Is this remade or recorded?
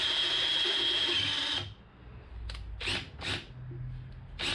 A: recorded